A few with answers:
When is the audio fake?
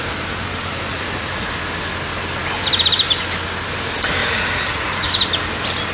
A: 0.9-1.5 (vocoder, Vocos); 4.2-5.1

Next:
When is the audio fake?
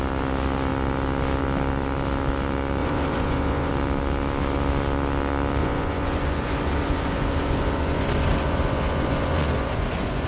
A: 2.8-3.7 (vocoder, Vocos); 5.6-10.3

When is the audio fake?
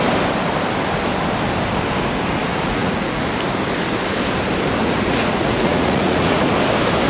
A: 2.5-3.3 (vocoder, Vocos); 4.8-6.5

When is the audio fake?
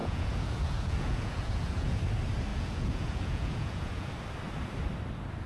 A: 0.0-2.0 (vocoder, Vocos); 2.5-4.1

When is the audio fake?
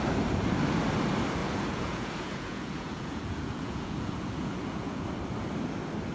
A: 1.4-5.1 (vocoder, Vocos)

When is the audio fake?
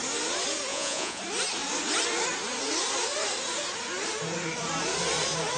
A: 0.7-1.2 (vocoder, Vocos)